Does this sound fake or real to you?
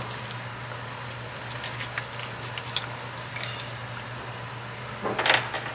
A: real